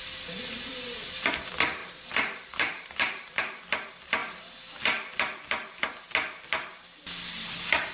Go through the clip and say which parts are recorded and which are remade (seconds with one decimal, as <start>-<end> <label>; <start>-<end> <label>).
0.0-1.8 recorded; 1.8-3.4 remade; 3.4-4.2 recorded; 4.2-5.4 remade; 5.4-7.9 recorded